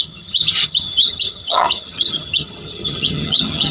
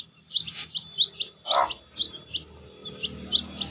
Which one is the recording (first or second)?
second